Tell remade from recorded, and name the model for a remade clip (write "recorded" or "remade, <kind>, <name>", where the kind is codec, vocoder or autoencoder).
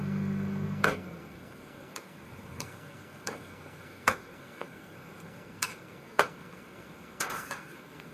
remade, codec, SNAC